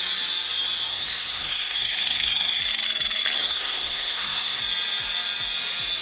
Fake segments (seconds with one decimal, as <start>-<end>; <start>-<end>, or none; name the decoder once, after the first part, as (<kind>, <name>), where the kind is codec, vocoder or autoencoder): 0.9-2.6 (codec, SNAC); 3.4-4.6